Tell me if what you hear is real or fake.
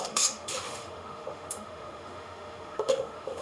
fake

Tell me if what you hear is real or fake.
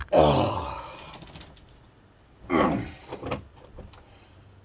real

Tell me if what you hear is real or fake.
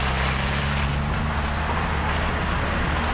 real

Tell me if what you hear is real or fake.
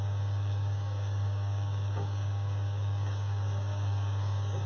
fake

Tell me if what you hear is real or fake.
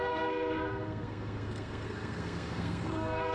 fake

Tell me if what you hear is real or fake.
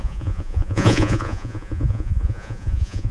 fake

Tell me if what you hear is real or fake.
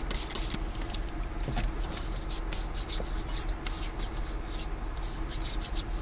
real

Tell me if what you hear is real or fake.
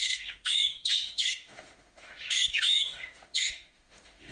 fake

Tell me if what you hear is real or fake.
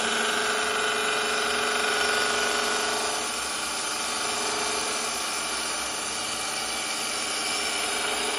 real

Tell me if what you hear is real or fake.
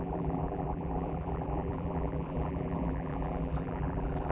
fake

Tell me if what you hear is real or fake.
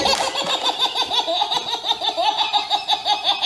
real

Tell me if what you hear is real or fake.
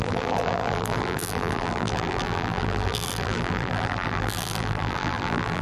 fake